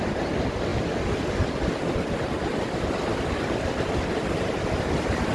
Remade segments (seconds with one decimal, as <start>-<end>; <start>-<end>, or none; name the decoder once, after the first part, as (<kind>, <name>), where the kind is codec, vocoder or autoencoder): none